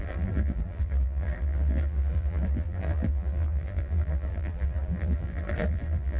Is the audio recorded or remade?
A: remade